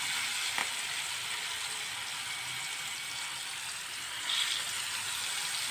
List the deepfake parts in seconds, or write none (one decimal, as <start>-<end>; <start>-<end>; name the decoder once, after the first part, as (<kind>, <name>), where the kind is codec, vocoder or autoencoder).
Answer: none

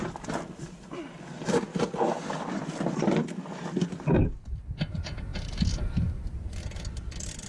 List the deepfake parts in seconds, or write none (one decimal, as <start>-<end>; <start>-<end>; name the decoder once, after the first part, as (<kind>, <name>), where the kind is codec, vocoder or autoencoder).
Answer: 1.7-2.8 (vocoder, BigVGAN v2)

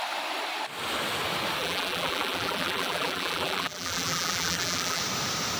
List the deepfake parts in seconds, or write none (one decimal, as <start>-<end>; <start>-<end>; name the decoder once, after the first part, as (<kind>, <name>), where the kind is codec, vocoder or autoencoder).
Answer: 1.6-5.0 (vocoder, BigVGAN v2)